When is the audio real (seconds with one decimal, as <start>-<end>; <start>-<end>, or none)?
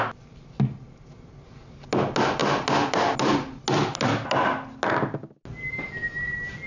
0.0-6.7